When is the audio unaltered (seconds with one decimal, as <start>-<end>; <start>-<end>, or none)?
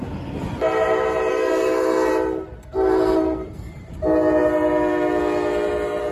0.0-1.3; 2.1-2.6; 3.9-6.1